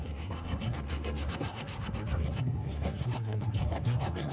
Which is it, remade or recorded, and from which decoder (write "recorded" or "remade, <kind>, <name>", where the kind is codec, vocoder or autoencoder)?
remade, codec, SNAC